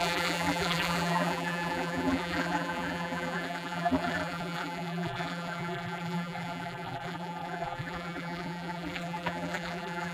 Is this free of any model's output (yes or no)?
no